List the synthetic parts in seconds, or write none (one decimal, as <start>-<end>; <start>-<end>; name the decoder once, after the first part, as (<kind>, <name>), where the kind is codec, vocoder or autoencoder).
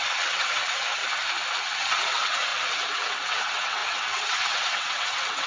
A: 0.0-1.0 (vocoder, WaveNeXt); 1.6-5.5